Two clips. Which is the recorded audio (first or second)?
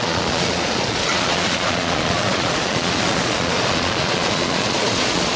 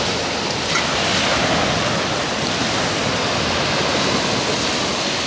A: second